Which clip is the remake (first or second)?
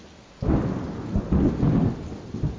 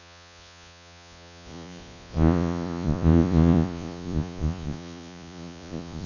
second